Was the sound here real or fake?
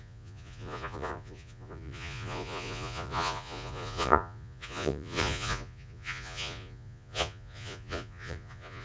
fake